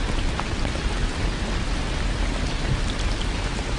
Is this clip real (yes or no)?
yes